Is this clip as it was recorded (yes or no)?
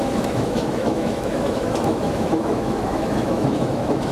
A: no